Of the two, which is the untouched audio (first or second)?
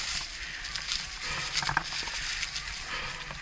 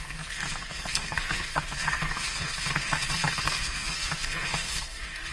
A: first